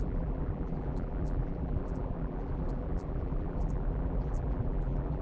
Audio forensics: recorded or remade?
remade